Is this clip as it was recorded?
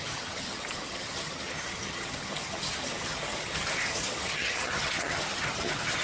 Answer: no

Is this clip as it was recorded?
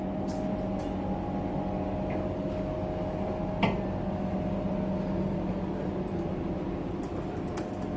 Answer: yes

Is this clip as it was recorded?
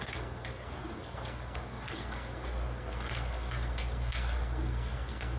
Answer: no